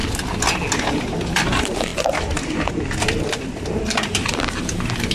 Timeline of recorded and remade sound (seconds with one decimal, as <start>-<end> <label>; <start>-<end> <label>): 0.0-1.0 recorded; 1.0-5.1 remade